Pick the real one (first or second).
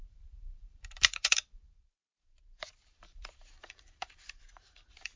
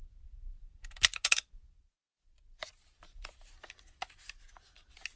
second